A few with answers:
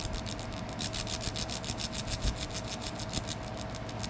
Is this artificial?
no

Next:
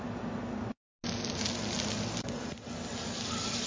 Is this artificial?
no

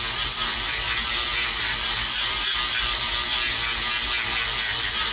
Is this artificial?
no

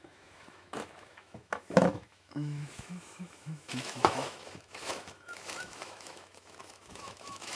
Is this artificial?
yes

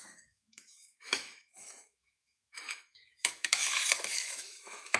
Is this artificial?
yes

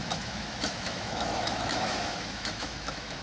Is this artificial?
yes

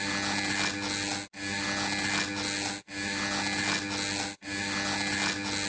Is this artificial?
no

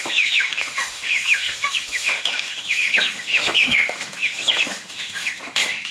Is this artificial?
yes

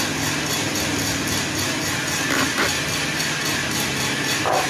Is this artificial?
no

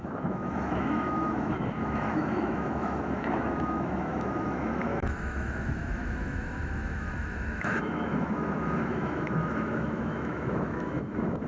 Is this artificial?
yes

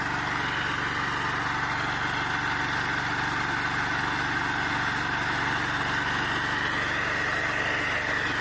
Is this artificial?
no